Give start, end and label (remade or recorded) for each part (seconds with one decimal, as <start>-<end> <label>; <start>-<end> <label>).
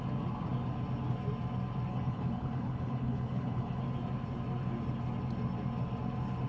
0.0-1.9 recorded; 1.9-3.8 remade; 3.8-6.5 recorded